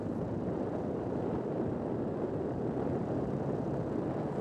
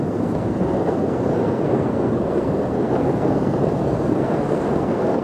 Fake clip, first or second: second